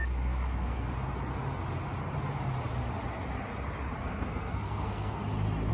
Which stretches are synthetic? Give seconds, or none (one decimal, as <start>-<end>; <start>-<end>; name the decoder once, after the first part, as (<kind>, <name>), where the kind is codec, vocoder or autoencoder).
0.0-0.9 (codec, SNAC); 4.0-5.2